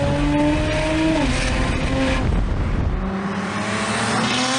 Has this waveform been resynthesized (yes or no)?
no